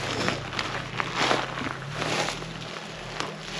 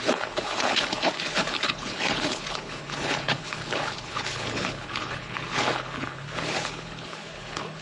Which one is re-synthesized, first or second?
second